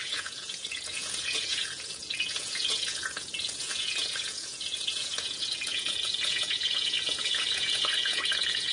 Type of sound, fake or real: fake